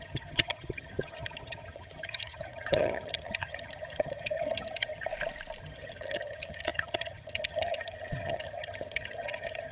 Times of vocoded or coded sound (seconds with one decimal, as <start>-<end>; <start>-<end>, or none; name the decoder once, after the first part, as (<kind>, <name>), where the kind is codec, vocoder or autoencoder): 0.0-5.1 (vocoder, HiFi-GAN); 5.6-9.7

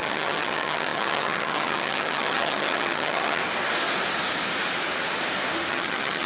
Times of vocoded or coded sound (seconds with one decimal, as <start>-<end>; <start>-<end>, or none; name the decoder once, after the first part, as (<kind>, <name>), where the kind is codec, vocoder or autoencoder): 0.0-3.4 (vocoder, HiFi-GAN); 5.7-6.3

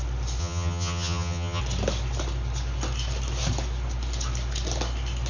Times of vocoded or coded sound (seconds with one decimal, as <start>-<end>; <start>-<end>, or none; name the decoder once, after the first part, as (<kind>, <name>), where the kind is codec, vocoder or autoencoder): 0.4-1.6 (vocoder, HiFi-GAN)

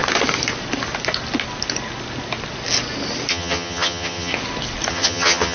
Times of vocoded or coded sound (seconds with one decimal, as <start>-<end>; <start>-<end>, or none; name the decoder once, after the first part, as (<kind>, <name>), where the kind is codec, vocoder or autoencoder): 3.3-4.3 (vocoder, HiFi-GAN); 4.9-5.5